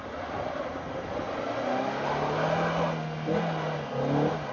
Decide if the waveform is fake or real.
real